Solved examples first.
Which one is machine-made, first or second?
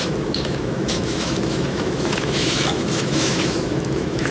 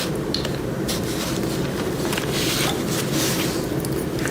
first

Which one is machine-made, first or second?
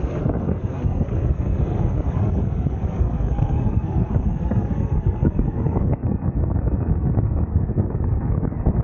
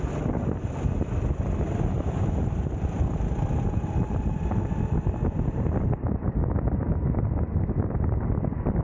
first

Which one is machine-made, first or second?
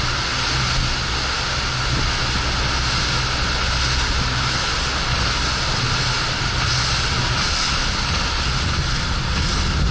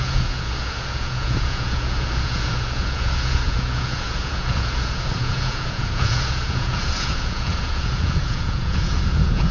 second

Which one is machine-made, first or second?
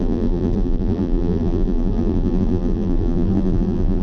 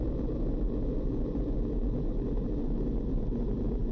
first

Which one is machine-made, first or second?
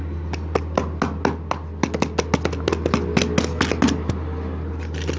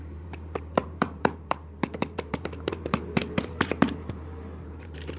second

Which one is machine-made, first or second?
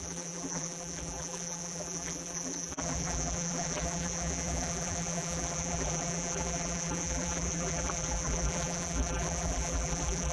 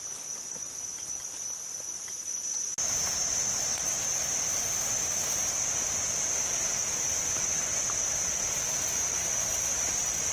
first